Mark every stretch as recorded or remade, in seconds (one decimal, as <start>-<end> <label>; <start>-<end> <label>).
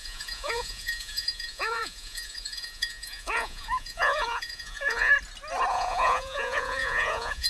0.0-5.1 remade; 5.1-5.7 recorded; 5.7-7.5 remade